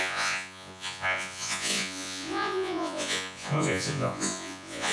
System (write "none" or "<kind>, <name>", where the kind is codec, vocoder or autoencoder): vocoder, Vocos